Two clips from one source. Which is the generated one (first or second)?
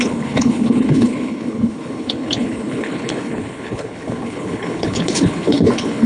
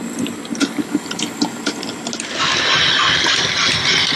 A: first